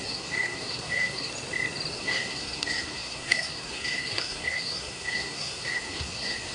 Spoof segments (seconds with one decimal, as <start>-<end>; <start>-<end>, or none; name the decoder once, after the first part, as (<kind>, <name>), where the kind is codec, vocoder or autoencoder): 0.0-1.3 (codec, SNAC); 2.0-6.5